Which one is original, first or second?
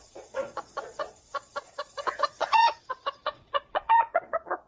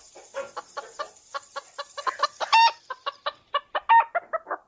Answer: second